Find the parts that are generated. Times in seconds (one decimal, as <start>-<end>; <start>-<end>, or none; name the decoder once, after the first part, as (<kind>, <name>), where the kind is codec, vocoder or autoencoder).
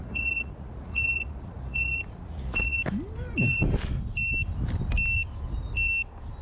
0.0-2.8 (vocoder, Vocos)